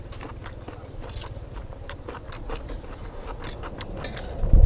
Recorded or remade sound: recorded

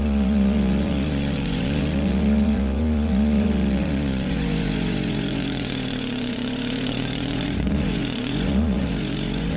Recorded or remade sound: remade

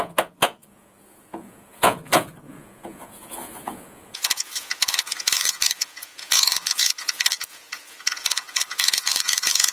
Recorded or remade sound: remade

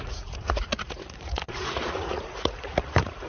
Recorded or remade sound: remade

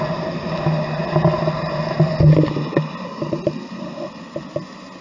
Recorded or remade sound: recorded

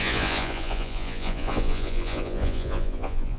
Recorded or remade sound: remade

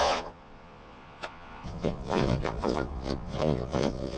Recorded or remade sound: remade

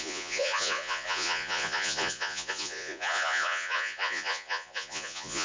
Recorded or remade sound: remade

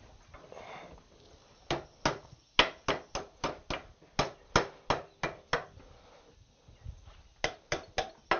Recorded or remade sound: recorded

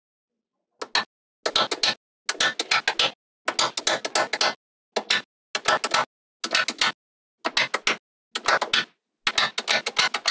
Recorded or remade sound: recorded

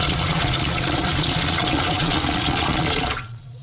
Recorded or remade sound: remade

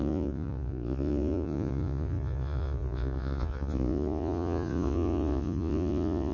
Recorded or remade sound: remade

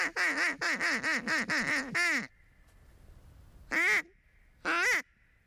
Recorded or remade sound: recorded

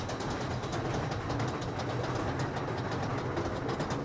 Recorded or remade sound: recorded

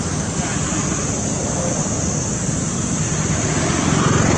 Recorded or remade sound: recorded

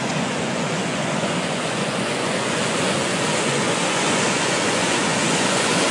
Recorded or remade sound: remade